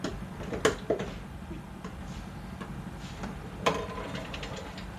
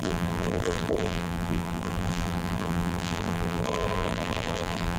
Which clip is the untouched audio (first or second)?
first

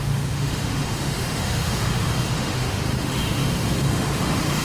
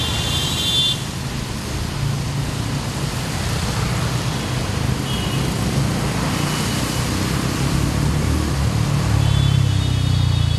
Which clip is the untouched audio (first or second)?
second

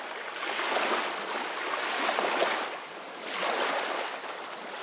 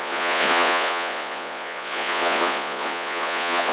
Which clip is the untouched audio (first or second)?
first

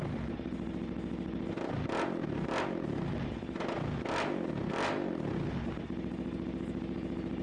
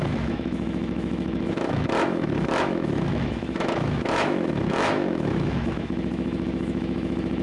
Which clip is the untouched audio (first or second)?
first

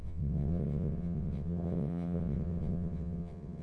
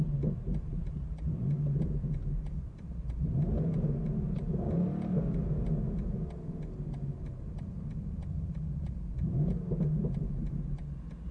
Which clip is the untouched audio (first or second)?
second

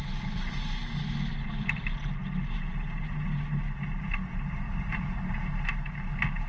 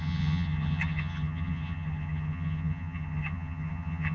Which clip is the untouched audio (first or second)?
first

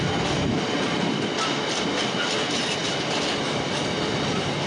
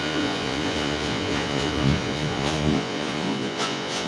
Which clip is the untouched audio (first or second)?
first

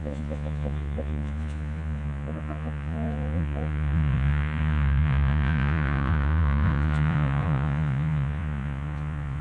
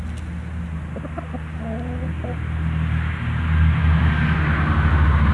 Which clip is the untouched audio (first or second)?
second